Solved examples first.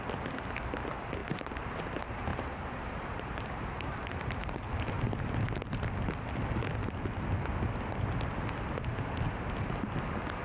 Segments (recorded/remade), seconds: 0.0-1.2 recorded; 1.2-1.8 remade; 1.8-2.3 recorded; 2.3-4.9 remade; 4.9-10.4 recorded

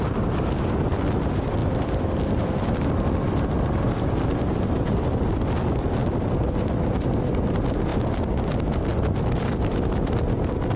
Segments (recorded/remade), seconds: 0.0-1.6 recorded; 1.6-4.9 remade; 4.9-6.0 recorded; 6.0-6.8 remade; 6.8-8.9 recorded; 8.9-10.8 remade

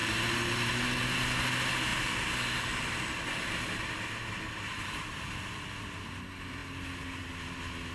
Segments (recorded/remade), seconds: 0.0-0.7 remade; 0.7-1.9 recorded; 1.9-5.8 remade; 5.8-7.9 recorded